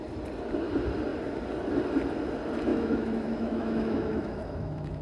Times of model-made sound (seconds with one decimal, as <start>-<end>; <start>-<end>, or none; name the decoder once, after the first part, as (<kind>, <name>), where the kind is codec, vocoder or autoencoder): 2.7-5.0 (autoencoder, DAC-VAE)